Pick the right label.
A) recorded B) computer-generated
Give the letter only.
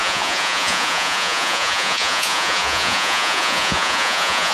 B